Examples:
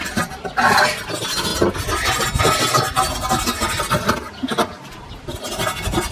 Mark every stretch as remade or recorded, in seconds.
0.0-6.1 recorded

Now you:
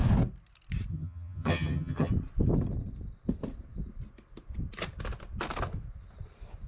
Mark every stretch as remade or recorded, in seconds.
0.0-0.9 recorded; 0.9-2.1 remade; 2.1-6.7 recorded

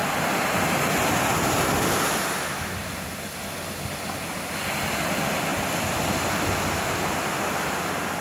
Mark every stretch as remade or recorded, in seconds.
0.0-8.2 recorded

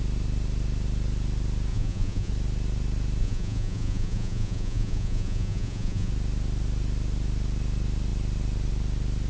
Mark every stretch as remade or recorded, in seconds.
0.0-1.7 recorded; 1.7-2.3 remade; 2.3-3.2 recorded; 3.2-6.1 remade; 6.1-9.3 recorded

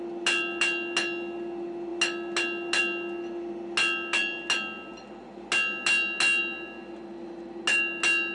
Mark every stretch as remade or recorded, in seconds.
0.0-8.3 recorded

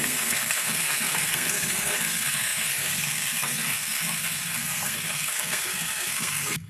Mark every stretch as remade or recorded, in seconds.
0.0-6.7 remade